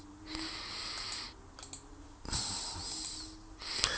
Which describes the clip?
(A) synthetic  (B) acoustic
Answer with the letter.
B